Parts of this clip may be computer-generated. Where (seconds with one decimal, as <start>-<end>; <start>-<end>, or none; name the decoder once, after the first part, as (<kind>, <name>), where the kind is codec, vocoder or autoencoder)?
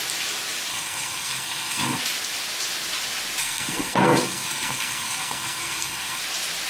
0.7-2.0 (codec, SNAC); 3.4-6.2